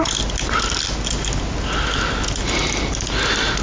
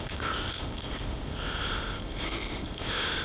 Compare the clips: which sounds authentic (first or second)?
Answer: first